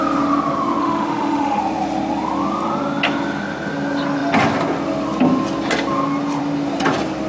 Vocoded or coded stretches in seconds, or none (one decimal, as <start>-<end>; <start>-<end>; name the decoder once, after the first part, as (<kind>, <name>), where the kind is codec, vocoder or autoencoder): 0.8-1.6 (autoencoder, DAC-VAE)